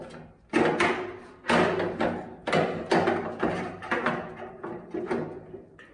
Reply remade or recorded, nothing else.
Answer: recorded